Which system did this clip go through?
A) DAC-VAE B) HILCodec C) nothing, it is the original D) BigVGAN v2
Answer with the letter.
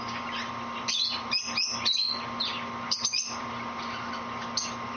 C